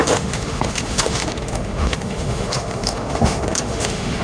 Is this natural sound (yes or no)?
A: no